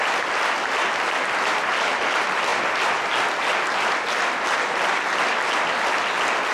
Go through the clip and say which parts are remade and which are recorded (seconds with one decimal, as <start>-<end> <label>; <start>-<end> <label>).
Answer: 0.0-6.5 recorded